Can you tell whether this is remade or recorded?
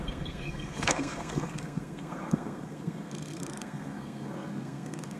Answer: remade